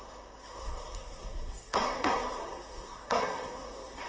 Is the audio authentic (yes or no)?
no